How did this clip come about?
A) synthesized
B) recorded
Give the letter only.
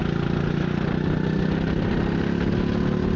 B